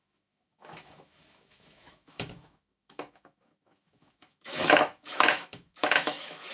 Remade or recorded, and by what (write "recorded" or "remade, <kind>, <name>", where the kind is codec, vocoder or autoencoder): remade, autoencoder, DAC-VAE